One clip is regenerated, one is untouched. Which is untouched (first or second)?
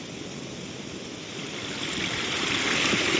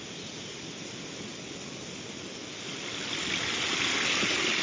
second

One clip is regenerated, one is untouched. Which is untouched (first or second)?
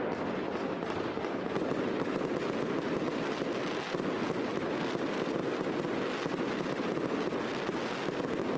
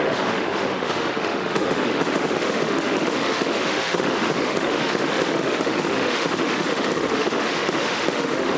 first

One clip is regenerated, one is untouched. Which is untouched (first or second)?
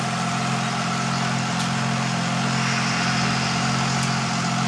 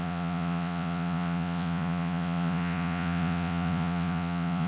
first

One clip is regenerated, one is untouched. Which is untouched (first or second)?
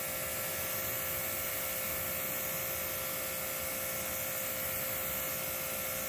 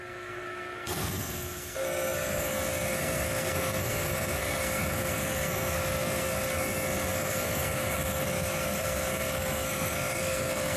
first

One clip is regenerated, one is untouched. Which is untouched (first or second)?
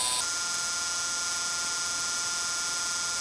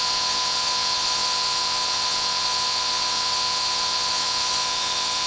first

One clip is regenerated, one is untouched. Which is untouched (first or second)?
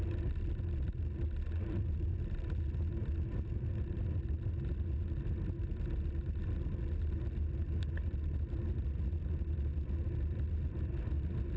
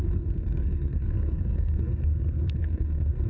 first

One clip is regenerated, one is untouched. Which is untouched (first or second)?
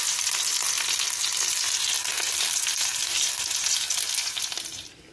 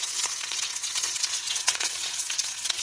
first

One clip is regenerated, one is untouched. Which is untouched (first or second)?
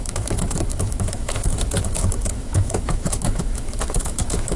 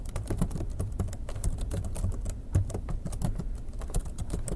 second